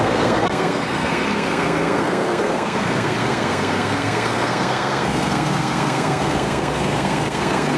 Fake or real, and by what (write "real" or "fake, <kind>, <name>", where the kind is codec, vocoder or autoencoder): fake, codec, SNAC